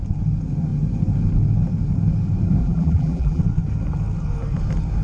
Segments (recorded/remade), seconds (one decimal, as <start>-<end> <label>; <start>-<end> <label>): 0.0-2.6 recorded; 2.6-3.4 remade; 3.4-5.0 recorded